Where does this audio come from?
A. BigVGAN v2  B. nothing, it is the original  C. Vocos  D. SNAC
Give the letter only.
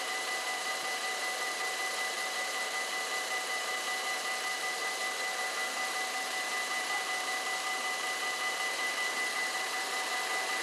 A